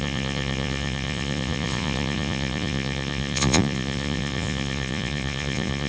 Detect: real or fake fake